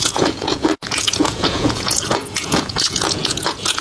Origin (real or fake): fake